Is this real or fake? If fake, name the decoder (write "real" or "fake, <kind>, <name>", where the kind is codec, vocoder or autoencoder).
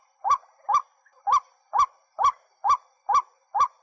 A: real